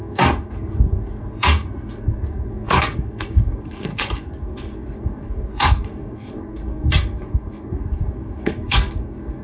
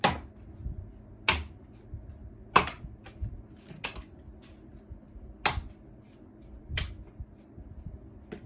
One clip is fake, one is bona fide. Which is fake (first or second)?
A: first